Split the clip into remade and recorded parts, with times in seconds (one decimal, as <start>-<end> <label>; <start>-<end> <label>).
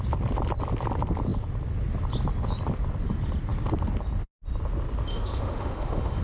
0.0-5.1 recorded; 5.1-6.2 remade